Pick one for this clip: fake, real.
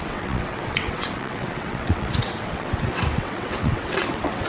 fake